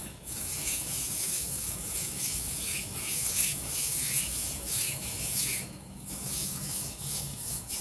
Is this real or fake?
fake